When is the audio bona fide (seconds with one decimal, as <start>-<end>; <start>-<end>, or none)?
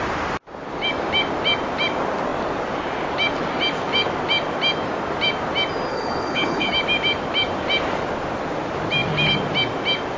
0.0-5.9; 6.7-10.2